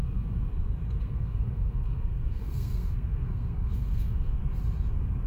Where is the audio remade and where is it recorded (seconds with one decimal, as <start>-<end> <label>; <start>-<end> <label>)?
0.0-0.5 remade; 0.5-1.0 recorded; 1.0-4.4 remade; 4.4-5.3 recorded